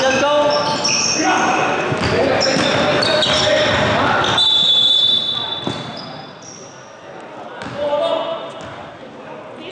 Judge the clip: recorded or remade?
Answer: recorded